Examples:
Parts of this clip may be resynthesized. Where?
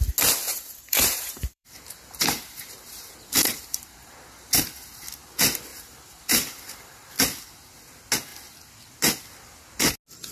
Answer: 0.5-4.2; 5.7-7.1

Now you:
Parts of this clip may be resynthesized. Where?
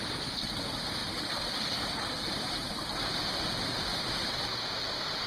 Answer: none